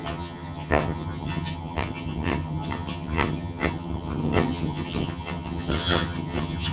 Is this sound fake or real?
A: fake